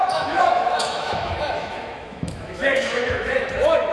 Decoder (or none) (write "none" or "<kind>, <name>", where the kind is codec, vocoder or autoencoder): autoencoder, DAC-VAE